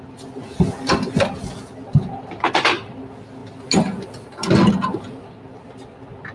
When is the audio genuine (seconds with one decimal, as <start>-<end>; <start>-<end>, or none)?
0.0-6.3

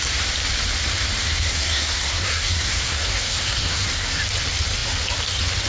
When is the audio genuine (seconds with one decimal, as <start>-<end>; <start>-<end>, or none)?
0.0-1.2; 4.2-5.7